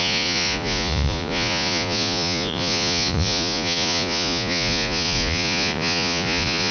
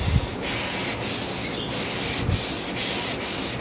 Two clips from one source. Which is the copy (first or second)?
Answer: first